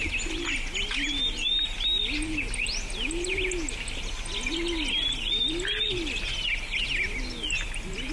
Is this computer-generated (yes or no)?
no